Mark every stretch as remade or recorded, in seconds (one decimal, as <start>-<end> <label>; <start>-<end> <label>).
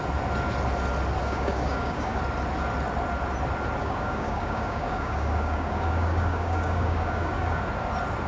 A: 0.0-1.2 recorded; 1.2-2.2 remade; 2.2-3.8 recorded; 3.8-7.6 remade; 7.6-8.3 recorded